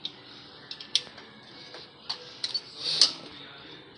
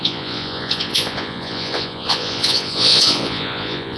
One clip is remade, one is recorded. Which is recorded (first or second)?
first